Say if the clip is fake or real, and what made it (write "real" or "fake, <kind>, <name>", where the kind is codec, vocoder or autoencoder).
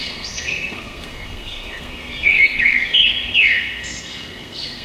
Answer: fake, codec, SNAC